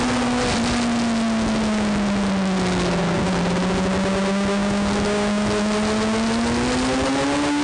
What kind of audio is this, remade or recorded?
recorded